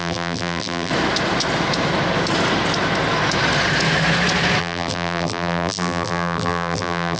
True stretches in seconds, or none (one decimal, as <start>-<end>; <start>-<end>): 0.9-4.6